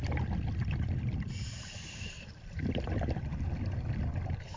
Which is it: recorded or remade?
recorded